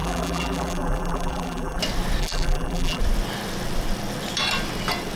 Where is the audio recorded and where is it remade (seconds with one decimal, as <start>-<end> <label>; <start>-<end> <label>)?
0.0-1.8 remade; 1.8-2.2 recorded; 2.2-3.0 remade; 3.0-5.2 recorded